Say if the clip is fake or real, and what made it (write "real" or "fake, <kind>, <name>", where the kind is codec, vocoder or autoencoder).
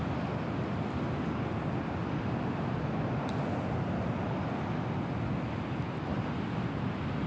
real